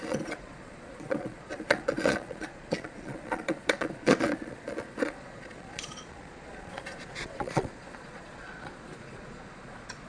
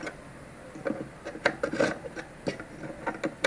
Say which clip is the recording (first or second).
second